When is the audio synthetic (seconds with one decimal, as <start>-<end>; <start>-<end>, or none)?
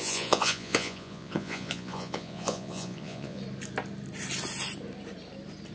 0.0-3.4